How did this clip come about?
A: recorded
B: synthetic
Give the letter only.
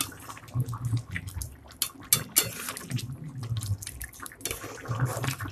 A